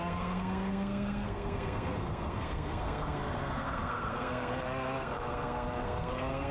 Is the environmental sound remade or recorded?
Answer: remade